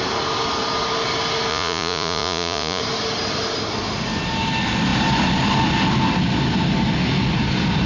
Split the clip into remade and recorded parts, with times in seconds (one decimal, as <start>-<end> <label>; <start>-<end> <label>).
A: 0.0-1.5 recorded; 1.5-2.8 remade; 2.8-7.9 recorded